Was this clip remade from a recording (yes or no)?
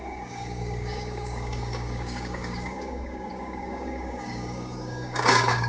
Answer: yes